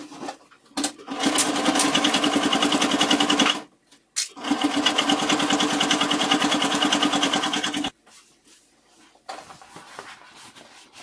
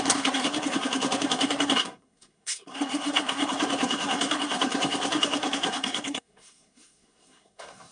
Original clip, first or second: first